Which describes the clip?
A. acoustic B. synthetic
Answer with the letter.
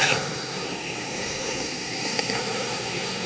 B